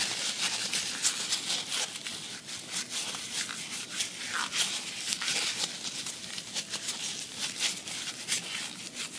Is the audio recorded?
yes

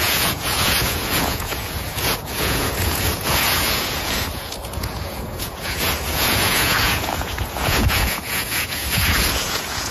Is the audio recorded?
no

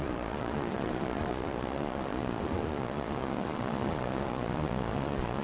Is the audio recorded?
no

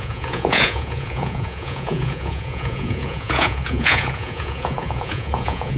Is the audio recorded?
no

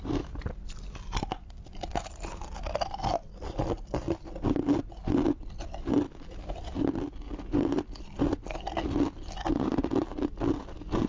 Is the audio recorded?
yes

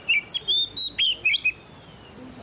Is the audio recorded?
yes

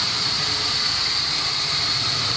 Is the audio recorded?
yes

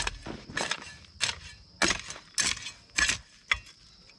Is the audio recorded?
yes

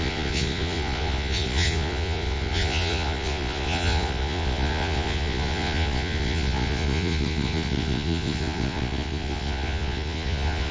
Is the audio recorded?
no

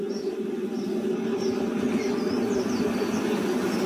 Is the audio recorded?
yes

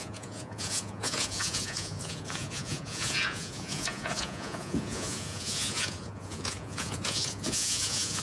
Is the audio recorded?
no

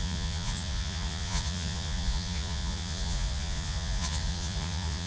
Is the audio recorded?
no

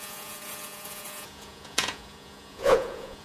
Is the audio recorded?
no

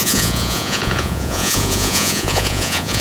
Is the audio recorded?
no